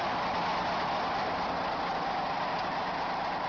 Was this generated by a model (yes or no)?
no